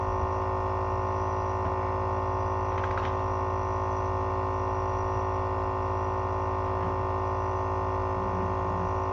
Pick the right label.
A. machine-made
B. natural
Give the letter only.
B